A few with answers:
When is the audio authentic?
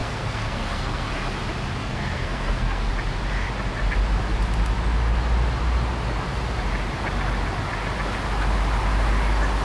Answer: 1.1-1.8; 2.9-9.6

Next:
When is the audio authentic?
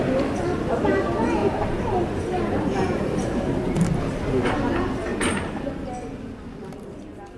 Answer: 0.0-1.4; 4.3-7.4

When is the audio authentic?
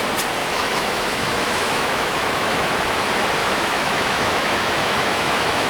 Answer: 0.0-0.4; 2.7-3.4